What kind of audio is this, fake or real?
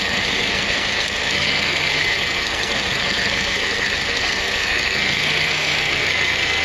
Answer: fake